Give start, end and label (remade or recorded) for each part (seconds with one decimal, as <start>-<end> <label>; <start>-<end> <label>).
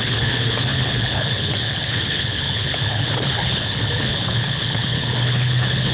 0.0-5.9 remade